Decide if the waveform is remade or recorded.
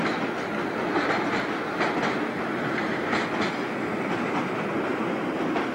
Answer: recorded